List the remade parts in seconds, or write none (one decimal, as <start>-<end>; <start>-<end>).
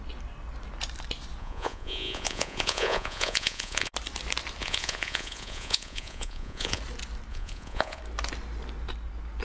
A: 1.4-3.9; 4.6-6.8; 7.3-8.0